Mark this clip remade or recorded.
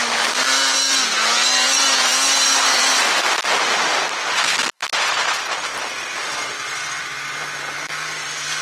remade